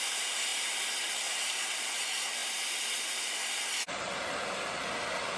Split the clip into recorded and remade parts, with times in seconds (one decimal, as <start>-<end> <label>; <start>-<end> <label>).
0.0-5.4 recorded